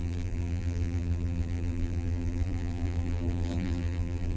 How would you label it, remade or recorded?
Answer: remade